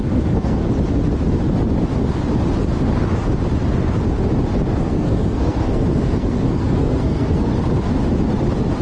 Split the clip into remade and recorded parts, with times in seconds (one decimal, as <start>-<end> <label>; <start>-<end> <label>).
0.0-0.6 remade; 0.6-4.8 recorded; 4.8-7.5 remade; 7.5-8.8 recorded

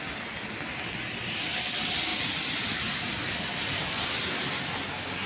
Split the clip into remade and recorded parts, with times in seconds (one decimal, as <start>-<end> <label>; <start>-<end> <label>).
0.0-5.3 recorded

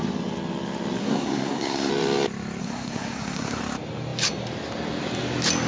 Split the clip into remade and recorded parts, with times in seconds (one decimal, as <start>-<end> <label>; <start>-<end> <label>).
0.0-1.0 recorded; 1.0-1.9 remade; 1.9-2.6 recorded; 2.6-3.6 remade; 3.6-5.7 recorded

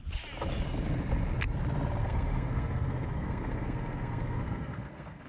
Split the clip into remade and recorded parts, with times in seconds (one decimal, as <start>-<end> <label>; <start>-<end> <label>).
0.0-2.0 recorded; 2.0-5.3 remade